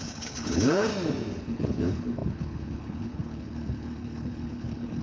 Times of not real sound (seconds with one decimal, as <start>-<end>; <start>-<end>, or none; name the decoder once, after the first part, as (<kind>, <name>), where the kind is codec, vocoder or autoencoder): 0.0-0.9 (codec, HILCodec); 1.4-5.0